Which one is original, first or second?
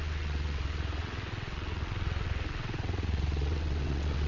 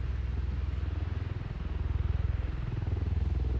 second